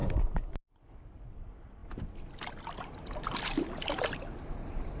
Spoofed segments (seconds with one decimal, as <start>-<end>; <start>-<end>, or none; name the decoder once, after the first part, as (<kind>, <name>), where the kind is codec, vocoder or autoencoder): none